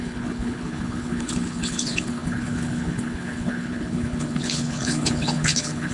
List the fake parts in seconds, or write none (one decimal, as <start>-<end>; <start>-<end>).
0.0-5.9